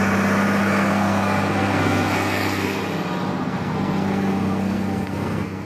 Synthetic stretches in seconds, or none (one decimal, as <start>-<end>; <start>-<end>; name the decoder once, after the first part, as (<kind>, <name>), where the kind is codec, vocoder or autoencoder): 0.6-2.8 (codec, SNAC); 3.3-5.7